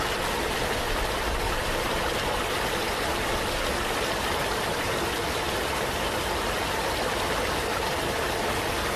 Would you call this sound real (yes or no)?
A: yes